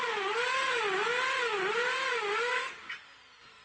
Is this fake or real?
real